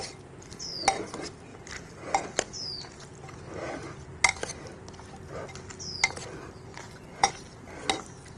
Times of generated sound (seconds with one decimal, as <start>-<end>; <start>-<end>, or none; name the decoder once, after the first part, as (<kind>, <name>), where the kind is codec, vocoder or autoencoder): 6.7-7.3 (vocoder, Vocos)